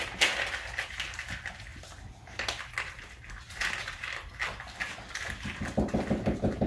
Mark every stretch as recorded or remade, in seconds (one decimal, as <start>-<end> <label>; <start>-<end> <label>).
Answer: 0.0-6.7 recorded